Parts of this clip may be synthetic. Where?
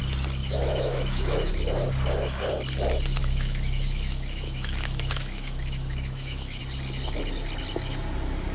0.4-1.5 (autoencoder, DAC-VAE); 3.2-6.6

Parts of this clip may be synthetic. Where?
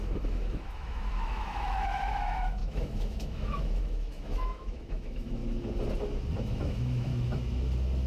0.0-5.4 (autoencoder, DAC-VAE); 6.4-7.1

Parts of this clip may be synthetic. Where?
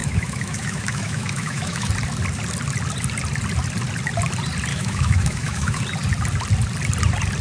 0.0-1.9 (autoencoder, DAC-VAE); 4.7-5.8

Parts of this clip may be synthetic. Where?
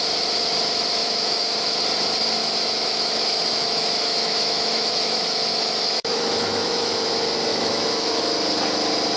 1.0-1.8 (autoencoder, DAC-VAE); 2.4-7.1; 7.5-8.2